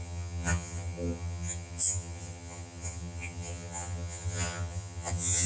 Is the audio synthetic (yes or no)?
yes